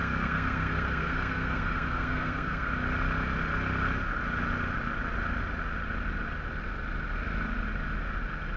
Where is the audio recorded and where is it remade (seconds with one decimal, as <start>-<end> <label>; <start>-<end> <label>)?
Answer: 0.0-2.7 remade; 2.7-8.6 recorded